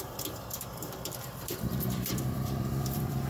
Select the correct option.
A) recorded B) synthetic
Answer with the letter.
B